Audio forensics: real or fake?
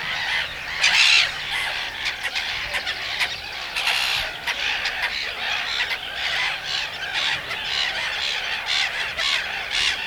fake